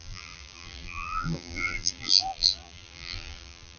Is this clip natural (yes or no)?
no